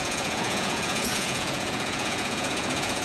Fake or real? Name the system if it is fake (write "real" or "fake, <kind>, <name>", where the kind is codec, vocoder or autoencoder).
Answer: fake, vocoder, Vocos